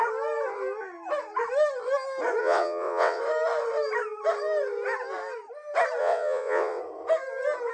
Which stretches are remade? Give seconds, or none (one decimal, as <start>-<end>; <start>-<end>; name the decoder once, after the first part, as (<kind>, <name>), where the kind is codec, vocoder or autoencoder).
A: 2.4-3.2 (vocoder, WaveNeXt); 6.0-6.8